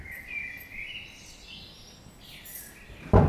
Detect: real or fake real